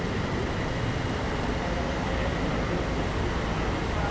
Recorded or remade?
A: recorded